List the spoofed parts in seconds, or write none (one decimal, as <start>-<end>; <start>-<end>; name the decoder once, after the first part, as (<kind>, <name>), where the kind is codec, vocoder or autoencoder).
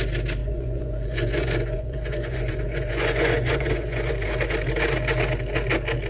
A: 0.4-4.1 (vocoder, Vocos)